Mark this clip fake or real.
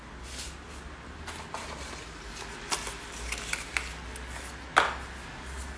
real